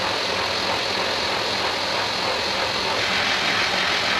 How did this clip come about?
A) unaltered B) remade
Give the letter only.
A